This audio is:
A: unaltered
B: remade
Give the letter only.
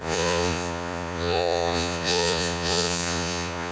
B